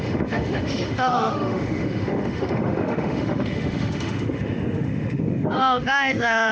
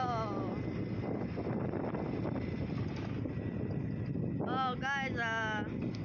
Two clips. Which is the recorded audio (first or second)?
second